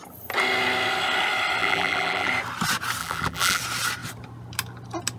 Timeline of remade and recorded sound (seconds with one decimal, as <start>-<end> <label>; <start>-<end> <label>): 0.0-1.6 recorded; 1.6-2.3 remade; 2.3-3.0 recorded; 3.0-3.6 remade; 3.6-5.2 recorded

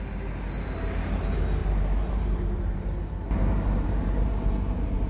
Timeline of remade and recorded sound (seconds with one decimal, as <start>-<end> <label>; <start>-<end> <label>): 0.0-1.6 recorded; 1.6-5.1 remade

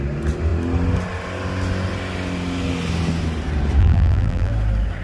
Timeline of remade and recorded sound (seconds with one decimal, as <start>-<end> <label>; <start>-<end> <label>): 0.0-3.8 recorded; 3.8-4.5 remade; 4.5-5.0 recorded

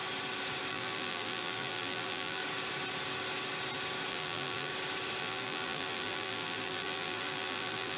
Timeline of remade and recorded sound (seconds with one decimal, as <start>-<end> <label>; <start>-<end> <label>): 0.0-0.7 recorded; 0.7-2.4 remade; 2.4-4.1 recorded; 4.1-4.7 remade; 4.7-5.2 recorded; 5.2-8.0 remade

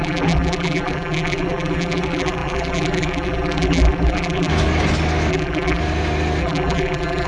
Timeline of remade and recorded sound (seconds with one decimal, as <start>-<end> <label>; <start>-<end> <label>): 0.0-4.5 remade; 4.5-5.3 recorded; 5.3-5.8 remade; 5.8-6.4 recorded; 6.4-7.3 remade

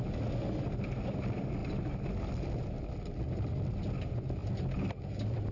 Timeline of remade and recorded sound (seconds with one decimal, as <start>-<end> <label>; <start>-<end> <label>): 0.0-4.4 recorded; 4.4-5.5 remade